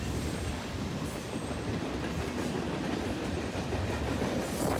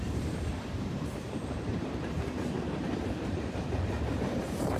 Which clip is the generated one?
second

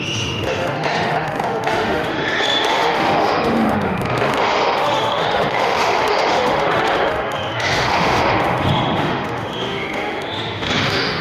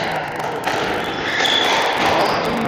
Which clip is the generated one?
first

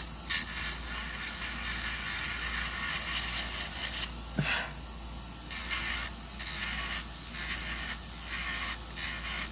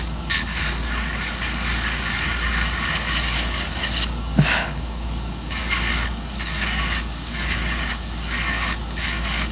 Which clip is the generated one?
second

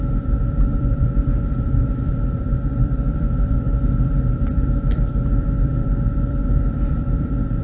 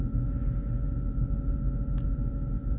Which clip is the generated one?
first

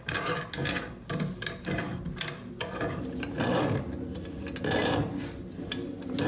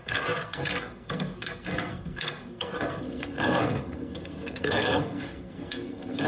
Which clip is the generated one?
second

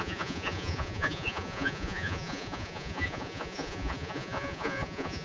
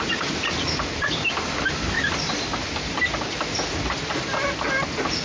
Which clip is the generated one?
first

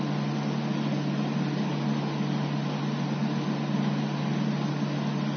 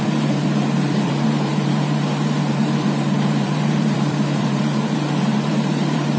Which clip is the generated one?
second